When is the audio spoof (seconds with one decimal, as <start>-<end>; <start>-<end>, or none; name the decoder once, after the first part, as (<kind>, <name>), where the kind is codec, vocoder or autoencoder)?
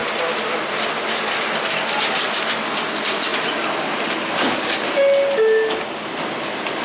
none